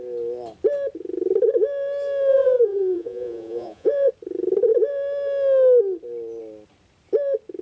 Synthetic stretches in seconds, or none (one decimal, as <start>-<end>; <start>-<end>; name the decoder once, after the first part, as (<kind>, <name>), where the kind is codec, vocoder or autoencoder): 2.3-4.1 (vocoder, Vocos)